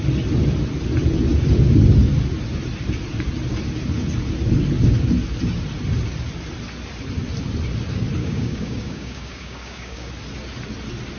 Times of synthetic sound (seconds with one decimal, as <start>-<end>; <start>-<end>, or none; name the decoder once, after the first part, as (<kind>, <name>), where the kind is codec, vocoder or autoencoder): 8.2-10.1 (codec, DAC)